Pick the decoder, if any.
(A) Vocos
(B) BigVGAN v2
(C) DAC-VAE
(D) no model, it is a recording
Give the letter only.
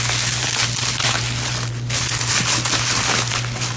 D